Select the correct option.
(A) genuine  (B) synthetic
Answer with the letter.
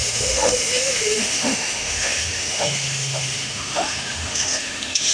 B